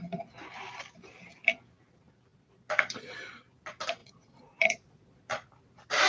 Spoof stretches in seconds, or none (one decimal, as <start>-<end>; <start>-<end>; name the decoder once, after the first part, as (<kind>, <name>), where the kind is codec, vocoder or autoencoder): 2.3-3.1 (vocoder, Vocos); 4.0-5.5